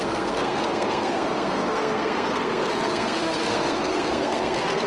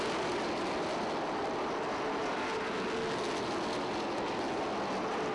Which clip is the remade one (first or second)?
first